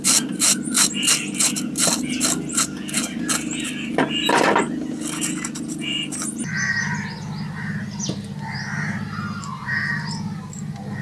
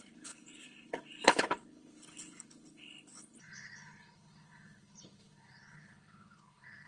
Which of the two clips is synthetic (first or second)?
second